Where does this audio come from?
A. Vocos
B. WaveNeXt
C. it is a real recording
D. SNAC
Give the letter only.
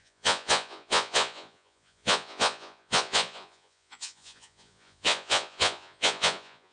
A